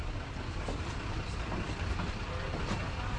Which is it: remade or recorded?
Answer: recorded